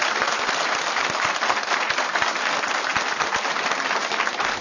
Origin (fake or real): real